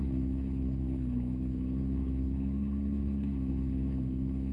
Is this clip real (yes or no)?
no